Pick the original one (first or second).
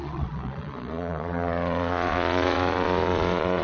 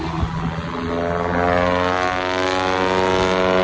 second